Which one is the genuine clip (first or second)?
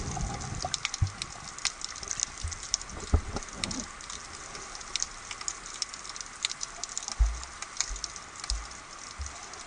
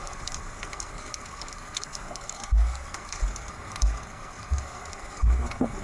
first